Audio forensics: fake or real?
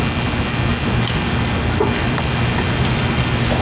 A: real